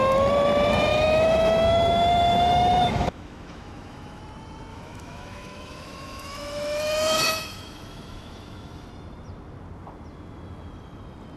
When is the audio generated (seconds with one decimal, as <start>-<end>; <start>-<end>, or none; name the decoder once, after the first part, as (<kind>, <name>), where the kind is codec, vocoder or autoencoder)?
0.9-4.2 (autoencoder, DAC-VAE); 4.7-8.9